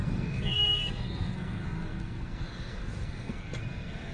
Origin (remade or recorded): remade